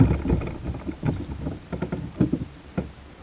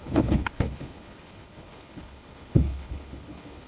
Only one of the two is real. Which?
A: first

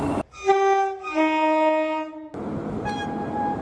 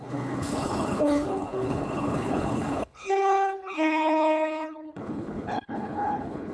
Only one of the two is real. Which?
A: first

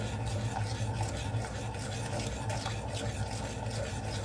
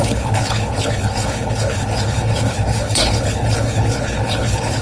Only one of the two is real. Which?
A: first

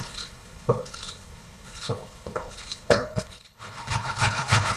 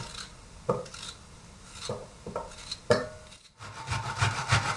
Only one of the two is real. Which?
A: second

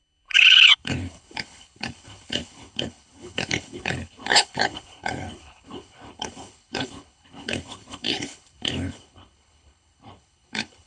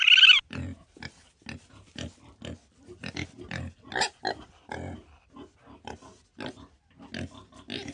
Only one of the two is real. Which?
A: second